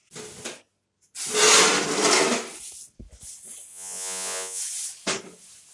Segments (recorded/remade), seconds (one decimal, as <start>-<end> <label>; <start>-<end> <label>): 0.0-3.7 recorded; 3.7-4.6 remade; 4.6-5.7 recorded